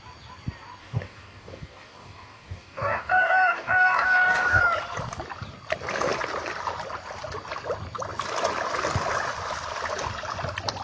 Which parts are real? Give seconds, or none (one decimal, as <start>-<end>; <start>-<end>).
0.0-0.8; 4.6-10.8